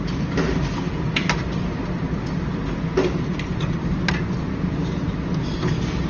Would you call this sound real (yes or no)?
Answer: yes